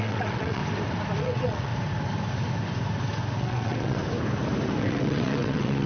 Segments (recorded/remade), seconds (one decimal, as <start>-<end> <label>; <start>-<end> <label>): 0.0-0.6 remade; 0.6-1.2 recorded; 1.2-1.7 remade; 1.7-3.4 recorded; 3.4-4.0 remade; 4.0-4.8 recorded; 4.8-5.9 remade